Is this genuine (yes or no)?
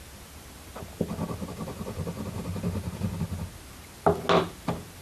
yes